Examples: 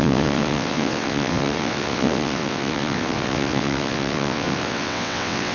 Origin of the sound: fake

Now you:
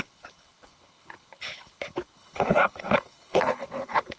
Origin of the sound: fake